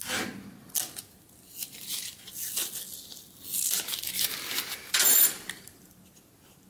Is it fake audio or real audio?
real